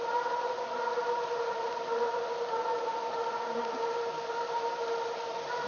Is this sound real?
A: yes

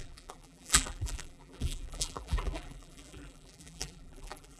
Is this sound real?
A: no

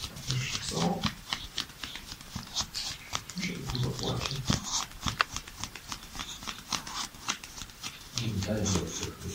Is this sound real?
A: no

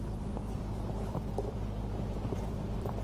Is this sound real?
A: no